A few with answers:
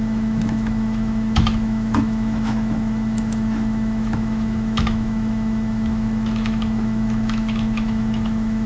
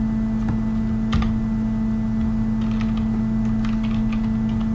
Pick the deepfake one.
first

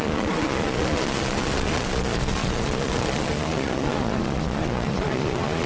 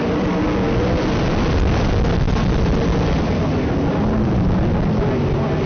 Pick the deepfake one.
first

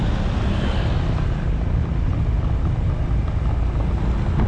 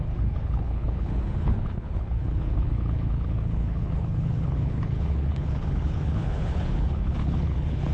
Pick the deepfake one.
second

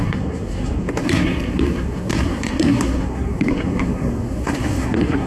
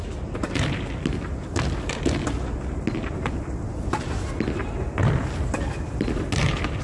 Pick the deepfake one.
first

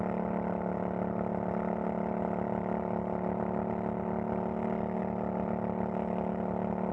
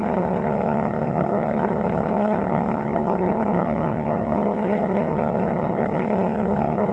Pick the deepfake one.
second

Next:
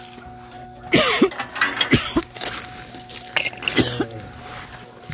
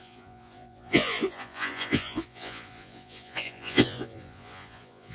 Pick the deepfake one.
second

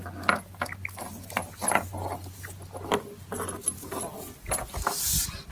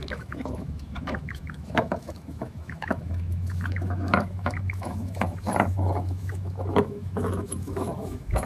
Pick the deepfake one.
second